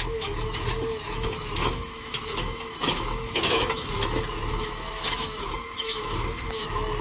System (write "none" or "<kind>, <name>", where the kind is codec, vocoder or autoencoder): autoencoder, DAC-VAE